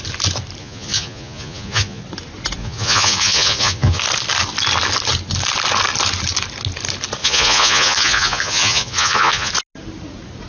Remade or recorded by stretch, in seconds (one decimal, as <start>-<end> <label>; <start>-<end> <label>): 0.0-0.6 recorded; 0.6-2.0 remade; 2.0-2.6 recorded; 2.6-4.0 remade; 4.0-7.2 recorded; 7.2-9.5 remade; 9.5-10.5 recorded